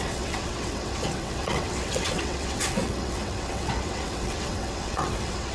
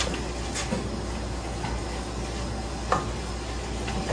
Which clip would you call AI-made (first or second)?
first